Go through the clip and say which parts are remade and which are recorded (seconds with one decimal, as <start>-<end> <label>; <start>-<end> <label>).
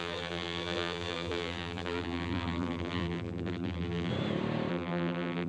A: 0.0-4.1 remade; 4.1-4.7 recorded; 4.7-5.5 remade